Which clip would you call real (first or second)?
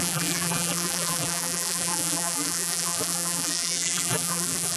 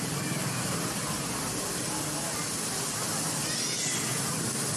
second